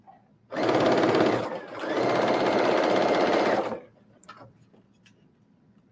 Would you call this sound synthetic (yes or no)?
no